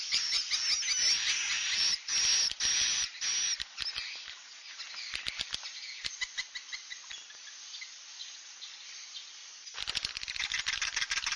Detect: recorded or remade recorded